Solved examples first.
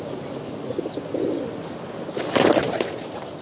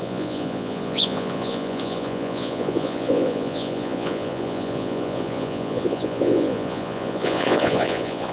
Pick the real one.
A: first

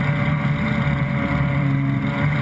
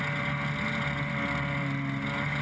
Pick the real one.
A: second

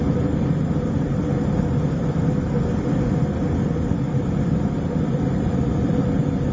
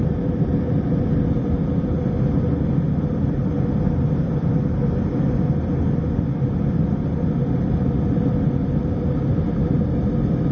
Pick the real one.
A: second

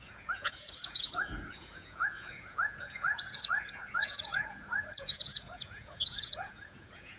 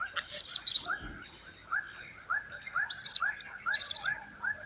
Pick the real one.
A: second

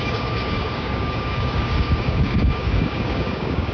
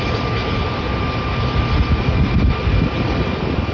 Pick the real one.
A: second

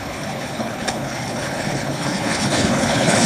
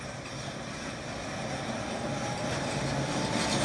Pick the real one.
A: second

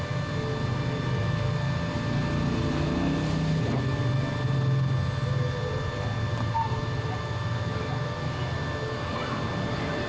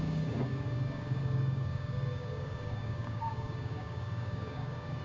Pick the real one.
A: first